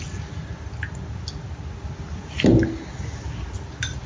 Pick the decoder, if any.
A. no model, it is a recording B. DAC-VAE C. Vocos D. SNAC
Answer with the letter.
A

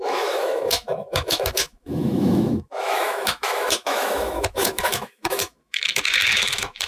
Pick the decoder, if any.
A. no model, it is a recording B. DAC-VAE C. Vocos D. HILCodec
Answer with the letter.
B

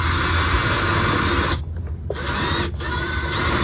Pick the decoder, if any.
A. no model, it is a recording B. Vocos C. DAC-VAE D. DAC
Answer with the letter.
A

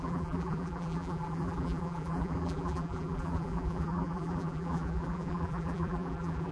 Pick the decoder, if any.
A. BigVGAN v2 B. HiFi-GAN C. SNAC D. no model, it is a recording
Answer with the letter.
A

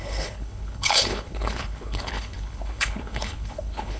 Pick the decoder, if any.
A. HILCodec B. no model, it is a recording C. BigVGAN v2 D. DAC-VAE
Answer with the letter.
A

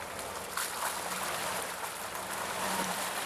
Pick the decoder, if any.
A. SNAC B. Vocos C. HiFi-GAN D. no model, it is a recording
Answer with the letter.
D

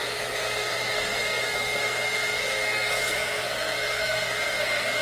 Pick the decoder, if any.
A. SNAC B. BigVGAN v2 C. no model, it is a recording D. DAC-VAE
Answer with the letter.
A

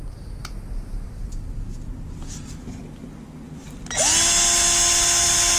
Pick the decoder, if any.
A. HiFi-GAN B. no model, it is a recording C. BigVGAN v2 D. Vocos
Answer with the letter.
B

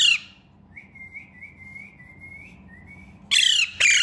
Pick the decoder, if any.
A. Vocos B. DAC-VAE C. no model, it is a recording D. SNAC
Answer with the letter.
C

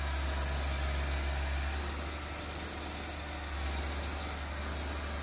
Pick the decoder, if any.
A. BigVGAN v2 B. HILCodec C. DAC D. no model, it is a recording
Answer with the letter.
D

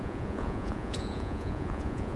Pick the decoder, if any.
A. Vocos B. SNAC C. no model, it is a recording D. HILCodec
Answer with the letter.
A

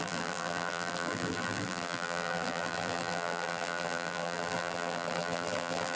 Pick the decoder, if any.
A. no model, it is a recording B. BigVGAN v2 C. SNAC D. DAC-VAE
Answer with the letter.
B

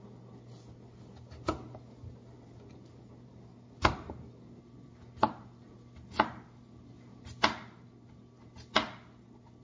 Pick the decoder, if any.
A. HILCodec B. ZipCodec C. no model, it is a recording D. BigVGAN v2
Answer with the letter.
C